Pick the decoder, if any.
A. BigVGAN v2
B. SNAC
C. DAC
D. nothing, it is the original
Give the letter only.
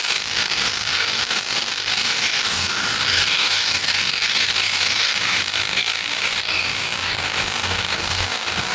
C